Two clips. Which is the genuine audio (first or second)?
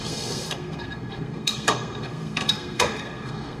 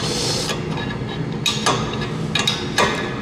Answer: second